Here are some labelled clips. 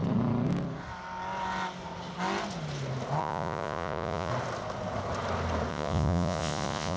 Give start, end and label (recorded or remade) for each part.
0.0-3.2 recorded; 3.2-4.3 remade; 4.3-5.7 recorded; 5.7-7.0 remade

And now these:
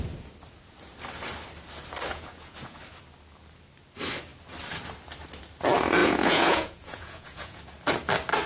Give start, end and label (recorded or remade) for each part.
0.0-2.1 recorded; 2.1-2.8 remade; 2.8-6.0 recorded; 6.0-7.6 remade; 7.6-8.5 recorded

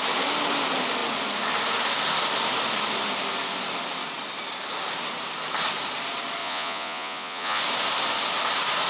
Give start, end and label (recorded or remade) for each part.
0.0-6.4 recorded; 6.4-7.6 remade; 7.6-8.9 recorded

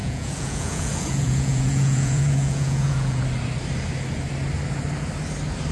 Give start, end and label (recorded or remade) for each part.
0.0-3.2 remade; 3.2-5.7 recorded

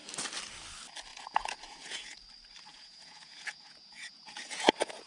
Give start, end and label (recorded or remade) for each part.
0.0-1.1 recorded; 1.1-2.2 remade; 2.2-2.7 recorded; 2.7-5.1 remade

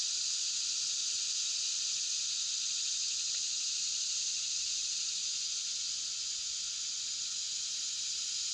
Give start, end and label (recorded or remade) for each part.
0.0-1.0 recorded; 1.0-2.5 remade; 2.5-5.2 recorded; 5.2-8.0 remade; 8.0-8.5 recorded